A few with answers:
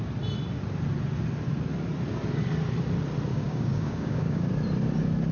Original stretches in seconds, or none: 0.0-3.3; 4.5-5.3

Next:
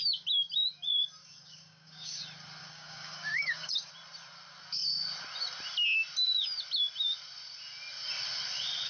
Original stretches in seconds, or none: 0.0-1.2; 2.2-2.6; 3.9-8.9

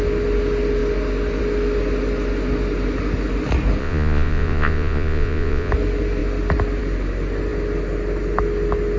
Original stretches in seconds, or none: 0.0-3.8; 5.7-9.0

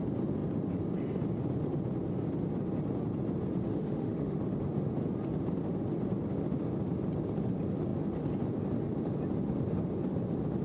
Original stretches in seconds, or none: 0.0-3.7; 4.4-10.6

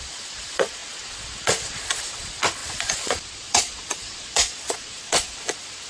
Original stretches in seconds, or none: none